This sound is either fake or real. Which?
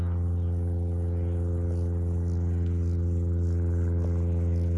real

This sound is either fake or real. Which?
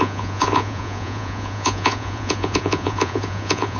fake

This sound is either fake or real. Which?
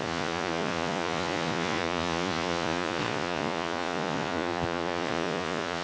fake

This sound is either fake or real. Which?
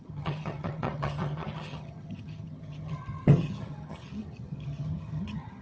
fake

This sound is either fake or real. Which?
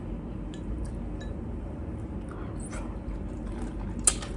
real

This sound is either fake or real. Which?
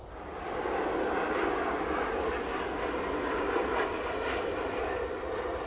real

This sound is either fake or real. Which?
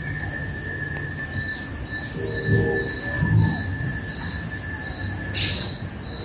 real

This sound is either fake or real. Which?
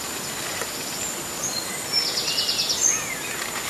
real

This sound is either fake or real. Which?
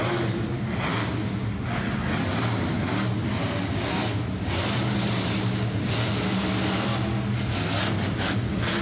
real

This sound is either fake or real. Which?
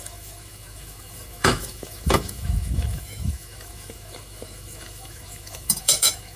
fake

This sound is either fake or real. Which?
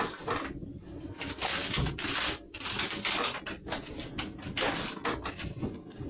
real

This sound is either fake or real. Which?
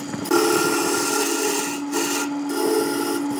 real